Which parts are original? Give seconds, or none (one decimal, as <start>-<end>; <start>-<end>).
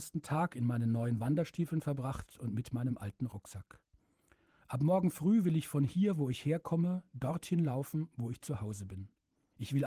2.9-7.0